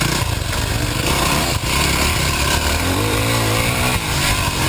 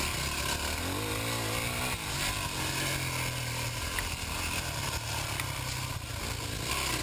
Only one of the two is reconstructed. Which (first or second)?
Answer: first